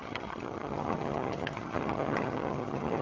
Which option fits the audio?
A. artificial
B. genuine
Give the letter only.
A